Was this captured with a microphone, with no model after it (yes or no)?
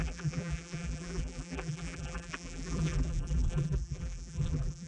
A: no